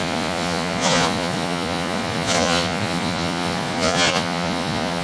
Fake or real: fake